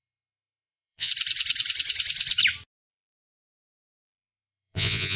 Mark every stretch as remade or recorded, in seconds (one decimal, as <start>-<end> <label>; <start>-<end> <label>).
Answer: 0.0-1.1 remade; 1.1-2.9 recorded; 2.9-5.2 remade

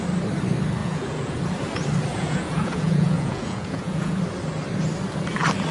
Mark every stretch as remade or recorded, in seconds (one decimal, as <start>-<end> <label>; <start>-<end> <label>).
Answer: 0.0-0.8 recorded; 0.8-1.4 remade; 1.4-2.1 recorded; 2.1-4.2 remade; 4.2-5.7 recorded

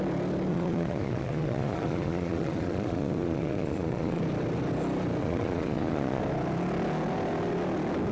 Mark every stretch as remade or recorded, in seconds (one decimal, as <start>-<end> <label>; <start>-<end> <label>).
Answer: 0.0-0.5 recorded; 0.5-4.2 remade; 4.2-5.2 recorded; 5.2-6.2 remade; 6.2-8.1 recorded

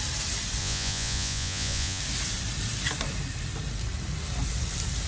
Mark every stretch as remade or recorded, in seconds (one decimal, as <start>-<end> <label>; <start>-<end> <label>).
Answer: 0.0-0.6 recorded; 0.6-2.0 remade; 2.0-5.1 recorded

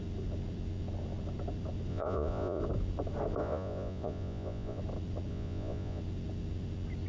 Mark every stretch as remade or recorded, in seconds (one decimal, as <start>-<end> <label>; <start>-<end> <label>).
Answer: 0.0-1.9 recorded; 1.9-2.6 remade; 2.6-3.4 recorded; 3.4-4.8 remade; 4.8-5.3 recorded; 5.3-6.0 remade; 6.0-7.1 recorded